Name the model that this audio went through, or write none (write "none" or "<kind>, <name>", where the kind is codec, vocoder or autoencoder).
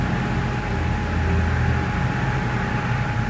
none